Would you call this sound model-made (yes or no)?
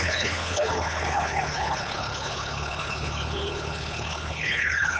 yes